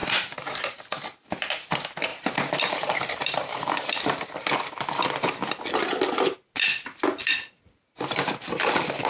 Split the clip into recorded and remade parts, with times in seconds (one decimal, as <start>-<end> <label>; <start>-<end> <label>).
0.0-1.3 remade; 1.3-2.1 recorded; 2.1-4.3 remade; 4.3-7.2 recorded; 7.2-8.4 remade; 8.4-9.1 recorded